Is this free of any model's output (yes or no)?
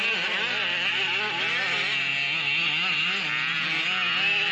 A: yes